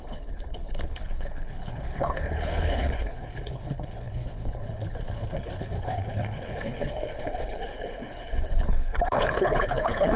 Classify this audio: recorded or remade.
remade